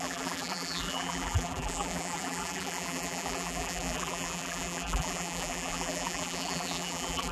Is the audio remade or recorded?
remade